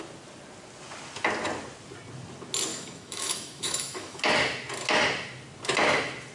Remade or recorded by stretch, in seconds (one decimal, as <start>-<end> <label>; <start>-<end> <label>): 0.0-2.7 recorded; 2.7-4.2 remade; 4.2-6.3 recorded